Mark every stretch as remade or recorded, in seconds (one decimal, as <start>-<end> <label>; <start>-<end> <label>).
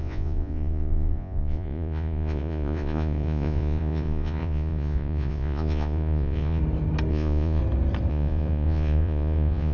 0.0-6.6 remade; 6.6-7.1 recorded; 7.1-7.6 remade; 7.6-8.1 recorded; 8.1-9.7 remade